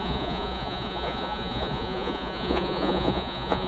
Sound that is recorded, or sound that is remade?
remade